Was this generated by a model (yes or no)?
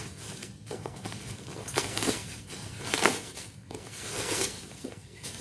yes